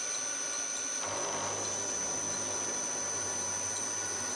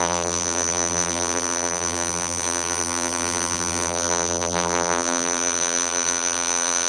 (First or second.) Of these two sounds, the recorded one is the first